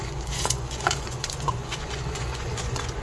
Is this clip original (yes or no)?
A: no